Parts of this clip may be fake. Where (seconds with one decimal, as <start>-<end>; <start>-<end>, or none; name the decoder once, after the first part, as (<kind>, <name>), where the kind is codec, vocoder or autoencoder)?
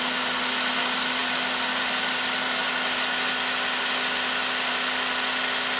none